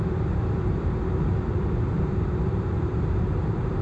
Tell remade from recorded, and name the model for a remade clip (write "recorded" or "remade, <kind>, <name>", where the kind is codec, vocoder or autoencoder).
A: remade, vocoder, BigVGAN v2